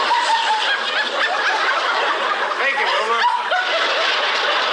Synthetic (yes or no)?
no